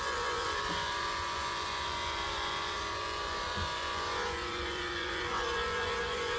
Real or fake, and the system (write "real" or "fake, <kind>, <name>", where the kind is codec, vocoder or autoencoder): fake, vocoder, Vocos